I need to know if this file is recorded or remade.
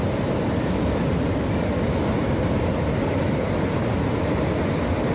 recorded